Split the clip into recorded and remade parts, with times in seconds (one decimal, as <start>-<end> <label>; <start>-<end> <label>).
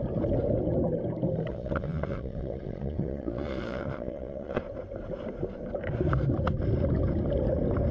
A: 0.0-1.5 recorded; 1.5-4.6 remade; 4.6-7.9 recorded